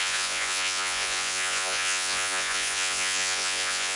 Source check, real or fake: fake